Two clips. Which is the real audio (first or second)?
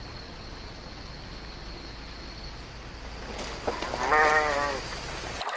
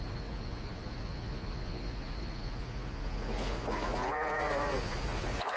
first